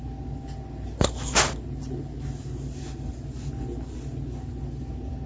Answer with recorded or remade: recorded